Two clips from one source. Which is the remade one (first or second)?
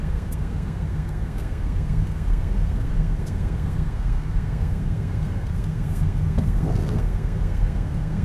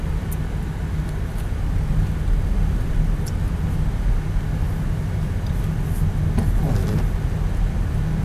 first